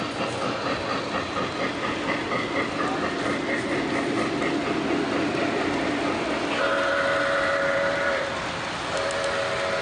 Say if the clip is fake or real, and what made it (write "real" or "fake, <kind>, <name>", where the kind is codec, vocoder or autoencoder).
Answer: real